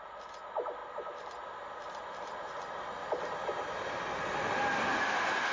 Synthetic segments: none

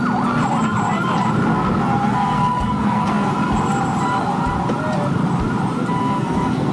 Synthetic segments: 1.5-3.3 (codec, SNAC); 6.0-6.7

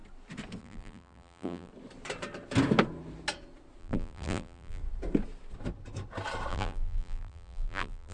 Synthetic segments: 0.6-1.7 (vocoder, BigVGAN v2); 3.8-4.8; 6.5-8.1

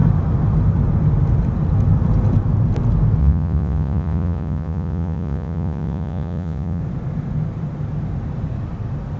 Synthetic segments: 3.2-6.8 (vocoder, Vocos)

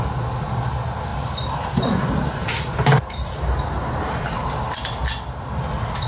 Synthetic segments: 1.1-2.0 (vocoder, BigVGAN v2); 2.4-4.0

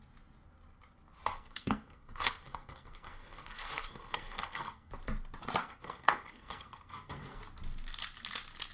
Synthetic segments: 1.3-4.9 (codec, SNAC); 5.6-7.4

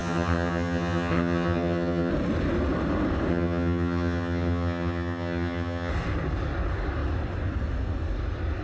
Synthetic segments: 0.0-2.1 (vocoder, HiFi-GAN); 3.3-5.9

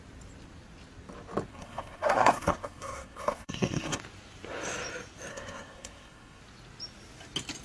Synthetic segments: 1.5-4.0 (codec, SNAC); 5.3-6.4